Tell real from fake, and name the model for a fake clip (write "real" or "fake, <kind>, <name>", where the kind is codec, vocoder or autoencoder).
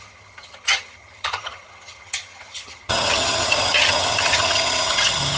fake, vocoder, HiFi-GAN